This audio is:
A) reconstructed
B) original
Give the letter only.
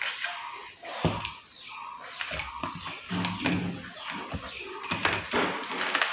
B